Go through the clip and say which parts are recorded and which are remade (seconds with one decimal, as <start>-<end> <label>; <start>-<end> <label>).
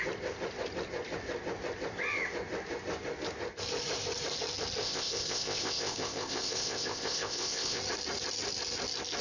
0.0-4.8 recorded; 4.8-7.8 remade; 7.8-9.2 recorded